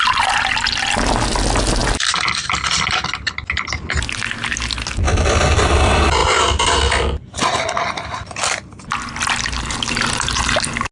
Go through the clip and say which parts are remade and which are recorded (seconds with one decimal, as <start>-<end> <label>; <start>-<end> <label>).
0.0-10.9 recorded